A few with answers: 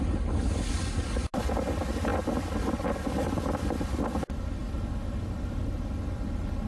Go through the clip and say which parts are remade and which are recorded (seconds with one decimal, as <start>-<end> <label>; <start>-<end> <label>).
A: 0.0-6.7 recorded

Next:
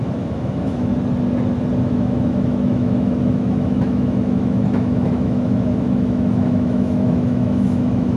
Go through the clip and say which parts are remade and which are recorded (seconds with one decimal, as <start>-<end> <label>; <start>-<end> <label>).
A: 0.0-0.9 remade; 0.9-1.8 recorded; 1.8-8.2 remade

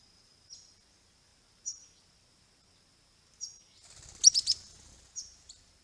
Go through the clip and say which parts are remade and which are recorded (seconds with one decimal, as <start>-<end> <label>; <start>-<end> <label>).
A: 0.0-5.8 recorded

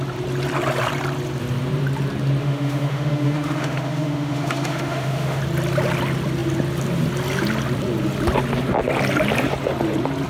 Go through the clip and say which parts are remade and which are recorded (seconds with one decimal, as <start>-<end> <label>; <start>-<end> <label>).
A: 0.0-2.4 recorded; 2.4-5.4 remade; 5.4-10.3 recorded